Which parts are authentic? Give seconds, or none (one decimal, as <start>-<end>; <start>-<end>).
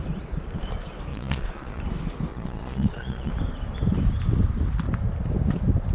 0.0-1.1; 1.8-2.3; 3.3-5.9